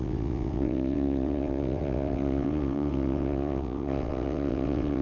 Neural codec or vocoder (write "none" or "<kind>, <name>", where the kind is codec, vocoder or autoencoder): vocoder, WaveNeXt